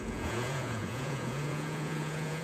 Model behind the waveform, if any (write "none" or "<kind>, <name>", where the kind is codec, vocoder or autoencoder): vocoder, Vocos